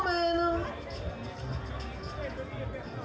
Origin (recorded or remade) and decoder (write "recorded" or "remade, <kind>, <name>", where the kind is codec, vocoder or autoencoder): recorded